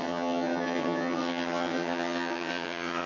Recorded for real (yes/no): no